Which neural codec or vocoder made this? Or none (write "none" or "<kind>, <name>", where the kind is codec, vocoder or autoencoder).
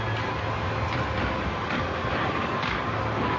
none